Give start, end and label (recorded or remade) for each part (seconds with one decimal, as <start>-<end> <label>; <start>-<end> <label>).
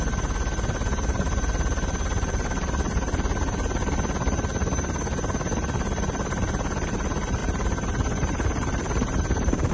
0.0-7.4 recorded; 7.4-9.7 remade